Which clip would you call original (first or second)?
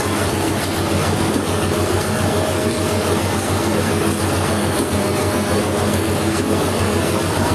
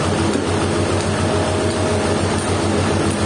second